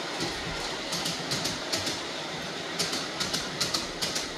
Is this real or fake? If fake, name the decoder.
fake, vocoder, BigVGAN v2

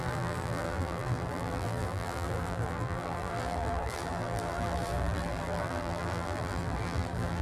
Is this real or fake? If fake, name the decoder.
fake, vocoder, BigVGAN v2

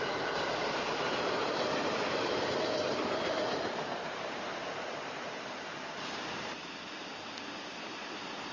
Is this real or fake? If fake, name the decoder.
fake, vocoder, BigVGAN v2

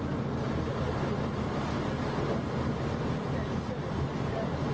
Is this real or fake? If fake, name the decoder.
real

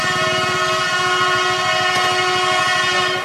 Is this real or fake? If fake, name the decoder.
real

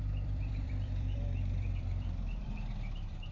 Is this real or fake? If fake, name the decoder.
fake, vocoder, BigVGAN v2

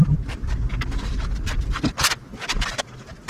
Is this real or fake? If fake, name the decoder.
fake, vocoder, BigVGAN v2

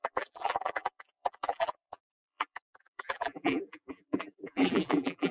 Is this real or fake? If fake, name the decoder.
fake, vocoder, BigVGAN v2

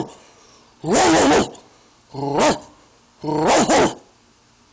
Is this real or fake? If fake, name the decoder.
real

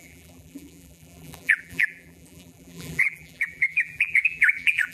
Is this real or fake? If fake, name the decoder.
fake, vocoder, BigVGAN v2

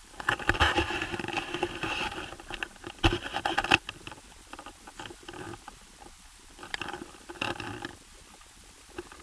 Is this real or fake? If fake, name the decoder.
fake, vocoder, BigVGAN v2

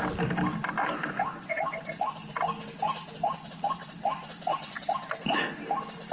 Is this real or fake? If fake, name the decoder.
real